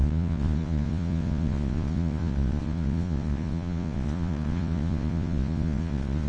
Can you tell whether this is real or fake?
fake